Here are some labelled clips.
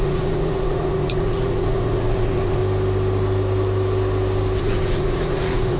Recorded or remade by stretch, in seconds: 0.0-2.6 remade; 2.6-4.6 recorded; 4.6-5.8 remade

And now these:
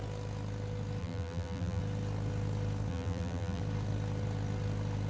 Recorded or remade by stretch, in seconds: 0.0-1.0 recorded; 1.0-1.8 remade; 1.8-2.9 recorded; 2.9-3.6 remade; 3.6-5.1 recorded